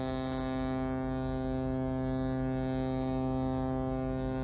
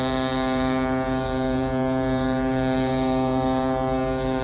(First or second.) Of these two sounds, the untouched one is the first